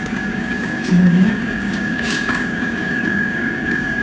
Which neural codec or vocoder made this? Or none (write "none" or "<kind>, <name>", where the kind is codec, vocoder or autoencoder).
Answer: codec, DAC